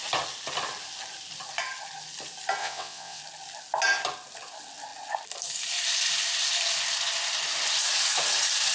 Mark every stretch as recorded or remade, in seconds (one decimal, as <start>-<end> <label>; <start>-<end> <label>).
0.0-2.6 recorded; 2.6-3.2 remade; 3.2-8.7 recorded

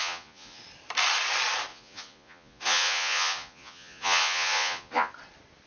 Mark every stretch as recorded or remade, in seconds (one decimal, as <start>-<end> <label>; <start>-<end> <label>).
0.0-0.6 remade; 0.6-1.7 recorded; 1.7-5.1 remade; 5.1-5.7 recorded